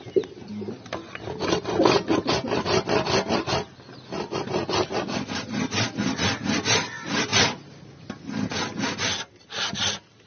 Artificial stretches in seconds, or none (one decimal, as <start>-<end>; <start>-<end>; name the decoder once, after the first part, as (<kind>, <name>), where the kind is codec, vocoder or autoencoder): none